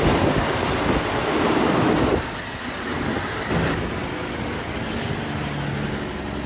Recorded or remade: recorded